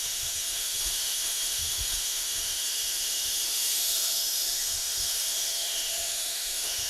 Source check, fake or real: fake